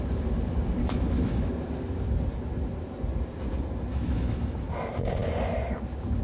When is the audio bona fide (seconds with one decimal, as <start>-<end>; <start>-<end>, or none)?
0.0-0.8; 1.5-3.9; 4.7-6.2